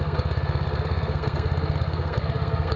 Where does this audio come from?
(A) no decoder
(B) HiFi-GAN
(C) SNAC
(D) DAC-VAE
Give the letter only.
C